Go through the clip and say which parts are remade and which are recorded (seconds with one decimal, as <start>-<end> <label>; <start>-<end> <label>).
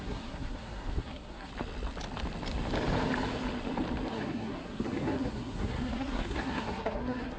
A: 0.0-1.5 remade; 1.5-4.1 recorded; 4.1-7.4 remade